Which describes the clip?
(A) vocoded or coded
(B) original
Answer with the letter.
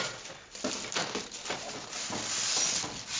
B